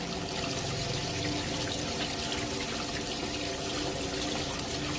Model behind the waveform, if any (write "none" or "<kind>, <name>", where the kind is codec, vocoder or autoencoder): none